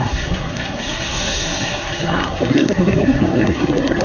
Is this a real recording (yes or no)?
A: no